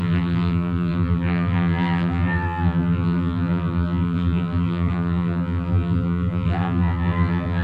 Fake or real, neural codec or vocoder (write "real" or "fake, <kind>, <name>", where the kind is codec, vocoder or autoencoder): fake, vocoder, BigVGAN v2